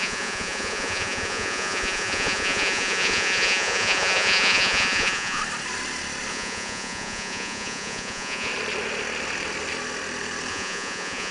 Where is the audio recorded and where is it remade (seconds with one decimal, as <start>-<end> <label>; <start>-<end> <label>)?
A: 0.0-5.4 remade; 5.4-6.3 recorded; 6.3-8.5 remade; 8.5-10.5 recorded; 10.5-11.3 remade